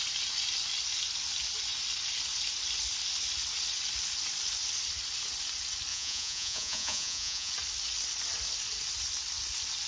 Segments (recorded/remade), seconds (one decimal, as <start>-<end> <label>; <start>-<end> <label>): 0.0-5.9 recorded; 5.9-7.5 remade; 7.5-9.9 recorded